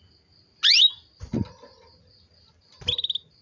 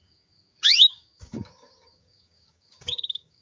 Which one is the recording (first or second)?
first